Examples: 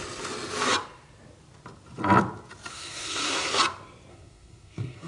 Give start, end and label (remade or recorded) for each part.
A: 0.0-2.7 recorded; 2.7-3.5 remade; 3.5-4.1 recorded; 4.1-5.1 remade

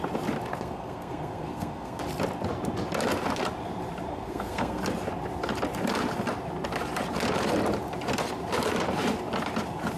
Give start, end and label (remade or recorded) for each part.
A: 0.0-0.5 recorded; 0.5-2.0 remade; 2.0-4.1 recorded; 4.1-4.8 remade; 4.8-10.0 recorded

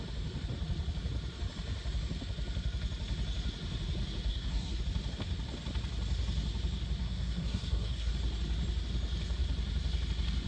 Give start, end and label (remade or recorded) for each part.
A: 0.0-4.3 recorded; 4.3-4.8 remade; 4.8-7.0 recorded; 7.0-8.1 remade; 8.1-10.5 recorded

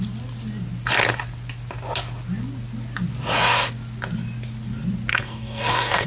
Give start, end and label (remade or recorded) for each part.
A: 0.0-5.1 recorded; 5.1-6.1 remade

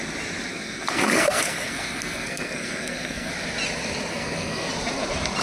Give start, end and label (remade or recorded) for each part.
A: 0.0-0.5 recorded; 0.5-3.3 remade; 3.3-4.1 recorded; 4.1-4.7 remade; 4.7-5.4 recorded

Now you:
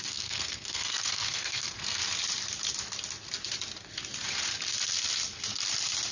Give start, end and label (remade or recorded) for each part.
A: 0.0-2.0 remade; 2.0-6.1 recorded

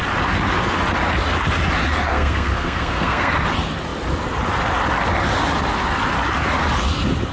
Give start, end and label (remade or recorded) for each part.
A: 0.0-2.1 recorded; 2.1-3.3 remade; 3.3-7.3 recorded

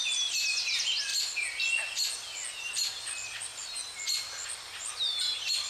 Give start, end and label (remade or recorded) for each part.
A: 0.0-5.7 recorded